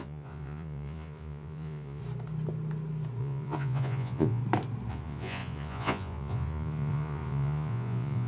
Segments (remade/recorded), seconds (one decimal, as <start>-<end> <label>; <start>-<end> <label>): 0.0-2.0 remade; 2.0-3.2 recorded; 3.2-4.4 remade; 4.4-4.9 recorded; 4.9-8.3 remade